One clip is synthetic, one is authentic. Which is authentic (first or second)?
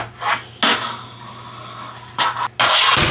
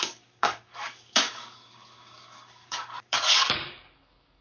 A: first